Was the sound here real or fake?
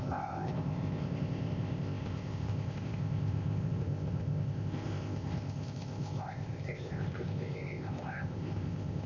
fake